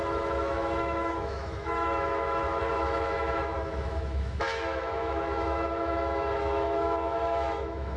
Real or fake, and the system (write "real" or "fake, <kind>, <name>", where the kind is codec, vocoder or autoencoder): fake, autoencoder, DAC-VAE